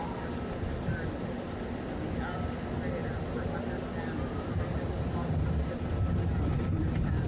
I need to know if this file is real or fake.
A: real